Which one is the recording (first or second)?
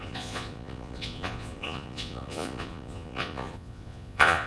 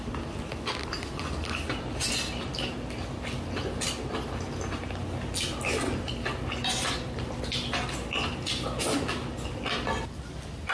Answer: second